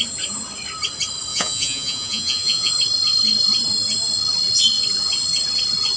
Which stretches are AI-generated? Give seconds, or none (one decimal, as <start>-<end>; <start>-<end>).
1.3-2.7

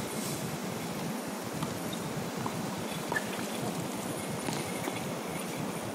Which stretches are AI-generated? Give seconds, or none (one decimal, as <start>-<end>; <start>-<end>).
0.6-3.1